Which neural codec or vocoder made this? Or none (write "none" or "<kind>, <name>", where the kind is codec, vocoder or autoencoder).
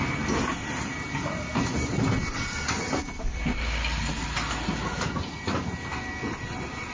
none